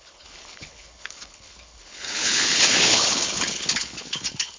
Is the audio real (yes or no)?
no